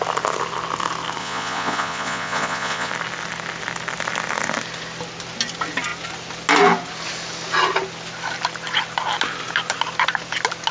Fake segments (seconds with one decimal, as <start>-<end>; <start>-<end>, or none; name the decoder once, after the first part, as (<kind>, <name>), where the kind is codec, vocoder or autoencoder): 1.2-2.9 (vocoder, Vocos)